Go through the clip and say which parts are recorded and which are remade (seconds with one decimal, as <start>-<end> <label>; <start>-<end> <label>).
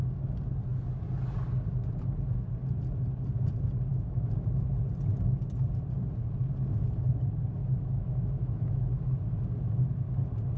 0.0-3.9 recorded; 3.9-4.5 remade; 4.5-7.6 recorded; 7.6-9.3 remade; 9.3-10.6 recorded